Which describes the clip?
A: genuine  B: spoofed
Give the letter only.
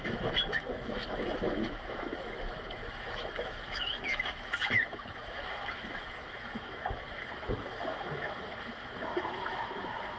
B